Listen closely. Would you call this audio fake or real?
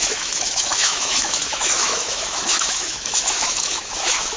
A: fake